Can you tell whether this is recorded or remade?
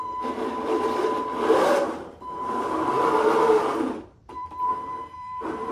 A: remade